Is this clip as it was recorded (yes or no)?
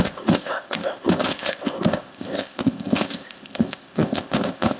no